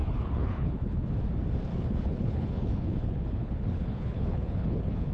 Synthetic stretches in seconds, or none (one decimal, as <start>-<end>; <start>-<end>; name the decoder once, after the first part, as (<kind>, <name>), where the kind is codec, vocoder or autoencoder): 0.0-1.1 (codec, HILCodec); 1.7-5.1